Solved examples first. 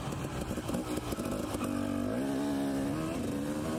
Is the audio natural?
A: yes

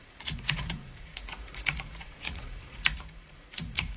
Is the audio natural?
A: no